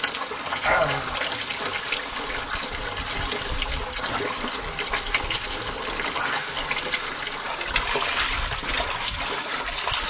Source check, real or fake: real